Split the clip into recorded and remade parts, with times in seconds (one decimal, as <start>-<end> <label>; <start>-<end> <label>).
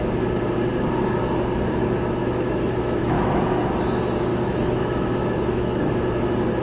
0.0-2.2 recorded; 2.2-3.4 remade; 3.4-4.3 recorded; 4.3-5.9 remade; 5.9-6.6 recorded